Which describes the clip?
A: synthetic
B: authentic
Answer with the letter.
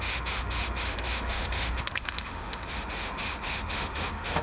A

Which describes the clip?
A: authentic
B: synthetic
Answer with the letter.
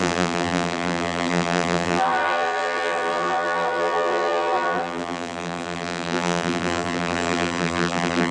B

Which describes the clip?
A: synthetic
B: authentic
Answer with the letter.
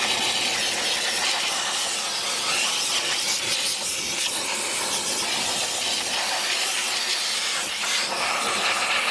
B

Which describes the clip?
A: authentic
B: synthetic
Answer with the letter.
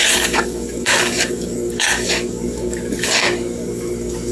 B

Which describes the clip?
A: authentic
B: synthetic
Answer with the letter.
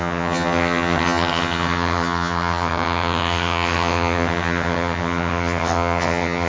B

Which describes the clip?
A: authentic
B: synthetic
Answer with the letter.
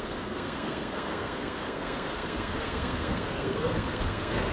B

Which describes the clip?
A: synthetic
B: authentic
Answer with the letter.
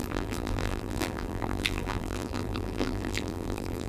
A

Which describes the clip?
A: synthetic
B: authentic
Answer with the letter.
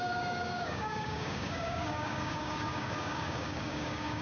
A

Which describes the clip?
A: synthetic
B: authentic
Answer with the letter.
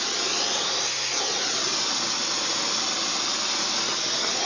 B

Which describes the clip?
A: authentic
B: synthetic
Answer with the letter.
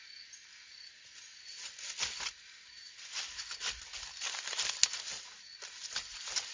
A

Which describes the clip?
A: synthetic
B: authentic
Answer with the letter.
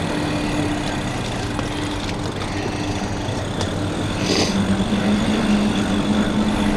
B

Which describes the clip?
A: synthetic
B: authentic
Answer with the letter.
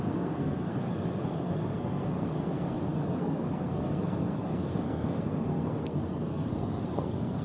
A